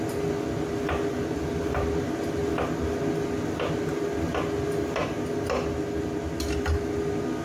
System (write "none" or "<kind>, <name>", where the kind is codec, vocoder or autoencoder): none